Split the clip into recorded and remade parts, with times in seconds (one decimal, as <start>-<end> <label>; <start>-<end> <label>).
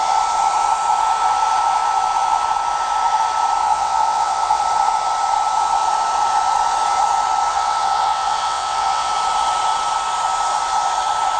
0.0-3.6 recorded; 3.6-4.6 remade; 4.6-7.5 recorded; 7.5-9.1 remade; 9.1-11.4 recorded